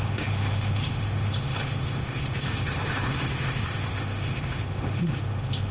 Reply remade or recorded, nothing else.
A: remade